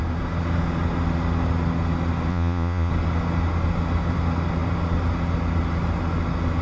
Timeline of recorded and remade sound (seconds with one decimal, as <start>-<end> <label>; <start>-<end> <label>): 0.0-2.3 recorded; 2.3-2.9 remade; 2.9-6.6 recorded